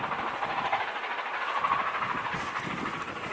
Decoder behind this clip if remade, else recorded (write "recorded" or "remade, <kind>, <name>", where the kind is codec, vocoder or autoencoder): recorded